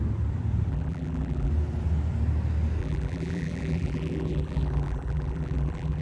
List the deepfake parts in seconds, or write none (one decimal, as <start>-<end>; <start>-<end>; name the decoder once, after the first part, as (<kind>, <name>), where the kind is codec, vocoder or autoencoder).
0.7-1.5 (vocoder, BigVGAN v2); 2.8-6.0